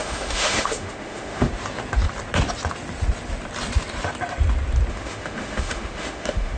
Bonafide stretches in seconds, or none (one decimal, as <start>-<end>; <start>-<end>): 1.5-4.9

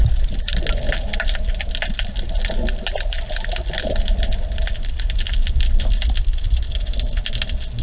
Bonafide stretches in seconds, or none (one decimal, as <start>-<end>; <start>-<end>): 0.0-7.8